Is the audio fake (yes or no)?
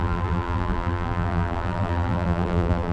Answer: yes